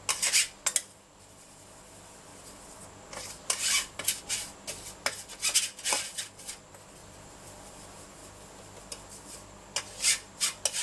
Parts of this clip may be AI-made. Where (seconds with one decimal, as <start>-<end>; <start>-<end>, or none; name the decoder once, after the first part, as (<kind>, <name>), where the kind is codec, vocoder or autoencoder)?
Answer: 7.0-7.7 (vocoder, BigVGAN v2)